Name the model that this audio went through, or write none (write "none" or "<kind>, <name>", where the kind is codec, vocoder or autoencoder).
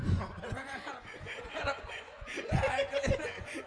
vocoder, Vocos